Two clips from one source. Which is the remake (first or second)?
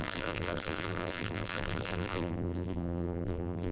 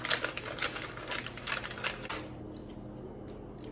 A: first